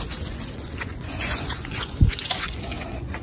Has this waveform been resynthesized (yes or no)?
yes